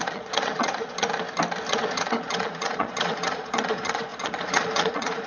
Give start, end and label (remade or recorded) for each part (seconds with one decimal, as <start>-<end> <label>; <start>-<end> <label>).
0.0-1.1 remade; 1.1-1.7 recorded; 1.7-5.3 remade